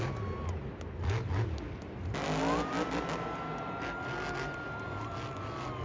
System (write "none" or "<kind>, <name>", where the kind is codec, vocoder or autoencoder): none